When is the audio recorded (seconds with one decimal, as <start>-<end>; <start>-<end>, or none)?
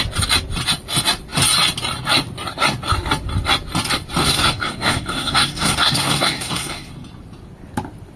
0.0-4.2; 6.9-8.2